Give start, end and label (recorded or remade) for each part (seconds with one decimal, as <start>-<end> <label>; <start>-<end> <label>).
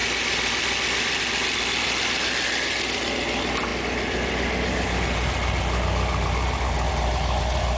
0.0-7.8 recorded